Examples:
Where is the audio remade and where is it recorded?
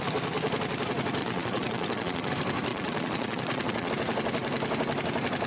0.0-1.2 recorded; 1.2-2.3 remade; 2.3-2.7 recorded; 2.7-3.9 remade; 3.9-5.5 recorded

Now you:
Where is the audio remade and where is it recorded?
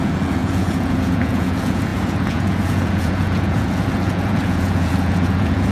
0.0-5.7 remade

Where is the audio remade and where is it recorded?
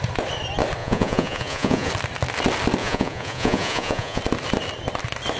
0.0-0.8 recorded; 0.8-1.9 remade; 1.9-2.8 recorded; 2.8-4.2 remade; 4.2-5.4 recorded